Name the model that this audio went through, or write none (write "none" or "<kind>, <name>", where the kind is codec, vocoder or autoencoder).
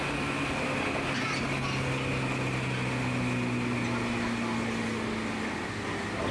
none